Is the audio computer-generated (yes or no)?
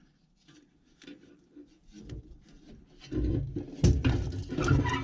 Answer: no